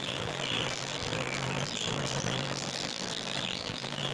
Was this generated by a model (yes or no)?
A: yes